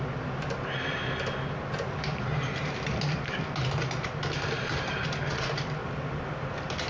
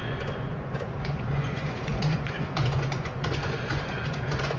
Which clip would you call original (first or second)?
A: first